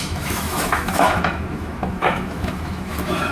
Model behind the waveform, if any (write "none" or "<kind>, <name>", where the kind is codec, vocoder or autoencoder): autoencoder, DAC-VAE